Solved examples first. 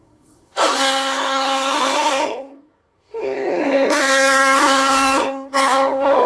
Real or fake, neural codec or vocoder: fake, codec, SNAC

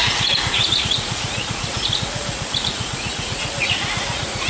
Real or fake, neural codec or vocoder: fake, vocoder, Vocos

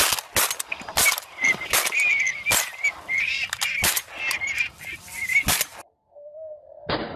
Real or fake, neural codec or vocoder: real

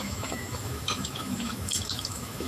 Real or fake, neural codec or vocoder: fake, autoencoder, DAC-VAE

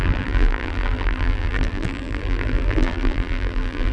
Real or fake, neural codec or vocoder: fake, vocoder, BigVGAN v2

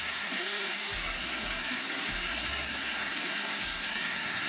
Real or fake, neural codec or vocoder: fake, codec, SNAC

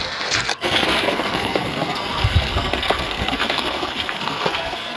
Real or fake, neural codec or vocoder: fake, codec, SNAC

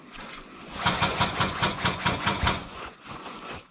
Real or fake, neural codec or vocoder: fake, vocoder, Vocos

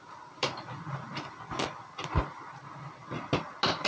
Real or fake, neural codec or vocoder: real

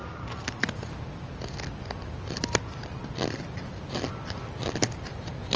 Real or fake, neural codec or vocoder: real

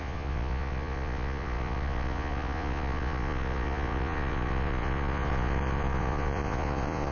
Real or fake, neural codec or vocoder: fake, vocoder, Vocos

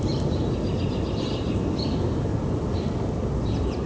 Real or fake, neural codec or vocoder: real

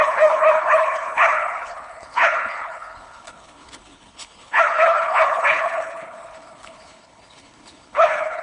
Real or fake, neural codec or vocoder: fake, codec, HILCodec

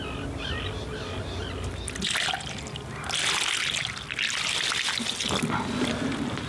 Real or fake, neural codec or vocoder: real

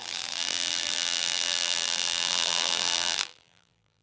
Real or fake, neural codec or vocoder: fake, vocoder, BigVGAN v2